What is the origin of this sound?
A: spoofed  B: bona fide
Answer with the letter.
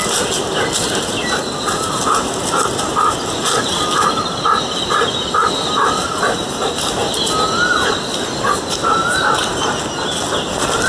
B